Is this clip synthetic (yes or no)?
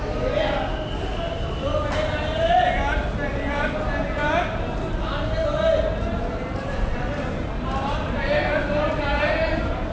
no